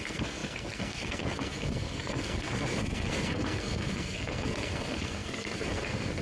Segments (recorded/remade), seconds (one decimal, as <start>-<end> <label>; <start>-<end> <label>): 0.0-6.2 remade